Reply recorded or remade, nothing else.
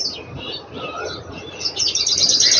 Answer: recorded